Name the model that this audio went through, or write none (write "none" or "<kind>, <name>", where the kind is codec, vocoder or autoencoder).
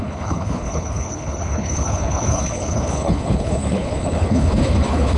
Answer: codec, HILCodec